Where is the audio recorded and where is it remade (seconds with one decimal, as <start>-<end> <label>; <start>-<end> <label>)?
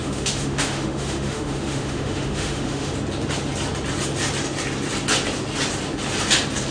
0.0-2.9 remade; 2.9-6.7 recorded